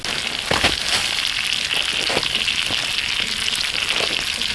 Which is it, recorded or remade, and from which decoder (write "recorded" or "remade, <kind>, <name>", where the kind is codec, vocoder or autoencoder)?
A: recorded